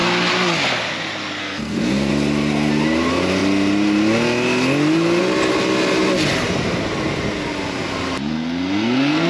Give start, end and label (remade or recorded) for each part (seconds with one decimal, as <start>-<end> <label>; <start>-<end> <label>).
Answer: 0.0-1.4 recorded; 1.4-2.1 remade; 2.1-8.3 recorded; 8.3-9.3 remade